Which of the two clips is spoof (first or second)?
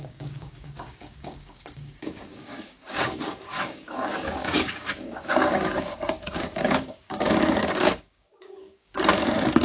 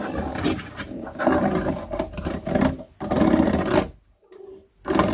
first